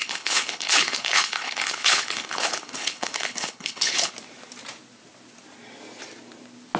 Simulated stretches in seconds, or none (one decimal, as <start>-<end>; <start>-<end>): 0.0-4.1